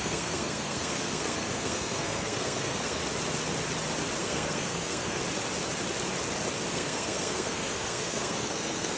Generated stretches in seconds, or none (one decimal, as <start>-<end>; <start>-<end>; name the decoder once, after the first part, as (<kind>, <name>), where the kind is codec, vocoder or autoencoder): 0.0-3.0 (codec, SNAC); 4.2-5.2; 6.7-9.0